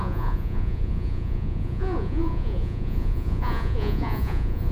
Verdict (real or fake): fake